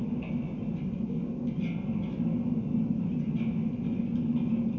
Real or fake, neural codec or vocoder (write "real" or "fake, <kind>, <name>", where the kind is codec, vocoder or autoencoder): real